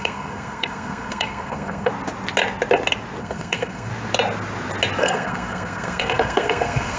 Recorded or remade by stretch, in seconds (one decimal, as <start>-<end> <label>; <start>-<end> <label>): 0.0-1.9 remade; 1.9-3.2 recorded; 3.2-3.9 remade; 3.9-5.0 recorded; 5.0-7.0 remade